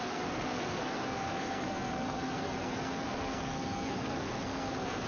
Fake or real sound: fake